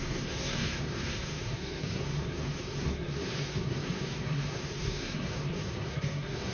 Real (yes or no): no